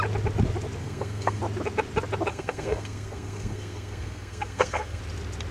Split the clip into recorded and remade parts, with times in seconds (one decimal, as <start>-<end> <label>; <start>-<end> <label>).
0.0-0.8 recorded; 0.8-1.4 remade; 1.4-2.3 recorded; 2.3-5.0 remade; 5.0-5.5 recorded